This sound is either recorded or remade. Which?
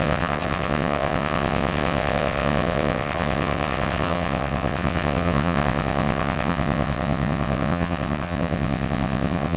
remade